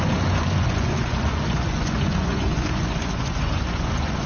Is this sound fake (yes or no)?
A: yes